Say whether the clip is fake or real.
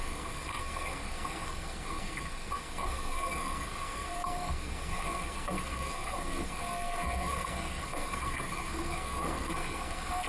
fake